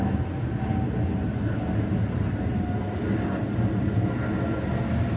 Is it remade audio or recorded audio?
recorded